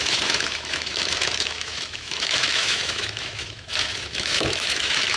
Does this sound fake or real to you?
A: fake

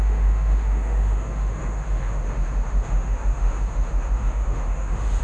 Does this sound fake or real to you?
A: fake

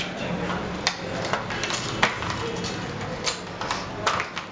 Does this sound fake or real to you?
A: real